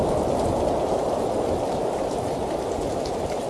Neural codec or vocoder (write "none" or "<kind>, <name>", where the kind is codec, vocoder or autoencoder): none